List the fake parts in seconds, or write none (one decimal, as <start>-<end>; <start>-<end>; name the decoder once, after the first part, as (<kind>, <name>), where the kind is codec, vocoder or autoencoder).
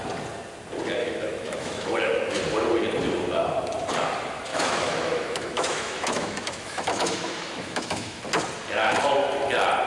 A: 1.0-2.4 (autoencoder, DAC-VAE); 4.5-8.2